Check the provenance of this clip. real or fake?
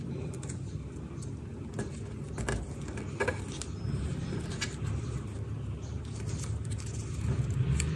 real